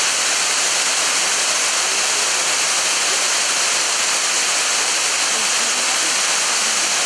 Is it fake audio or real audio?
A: real